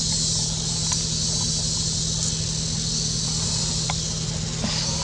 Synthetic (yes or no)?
no